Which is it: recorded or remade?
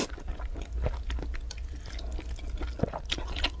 recorded